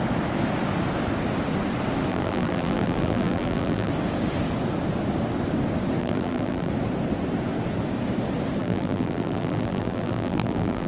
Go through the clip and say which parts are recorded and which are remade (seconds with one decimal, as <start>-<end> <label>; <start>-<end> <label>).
0.0-2.1 recorded; 2.1-3.9 remade; 3.9-6.0 recorded; 6.0-6.7 remade; 6.7-8.6 recorded; 8.6-10.9 remade